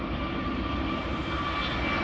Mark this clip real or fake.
real